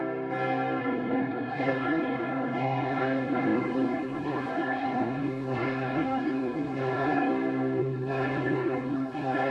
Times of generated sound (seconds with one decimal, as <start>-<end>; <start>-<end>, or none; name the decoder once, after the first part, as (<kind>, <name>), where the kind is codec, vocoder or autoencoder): 0.8-7.3 (codec, SNAC); 7.8-9.5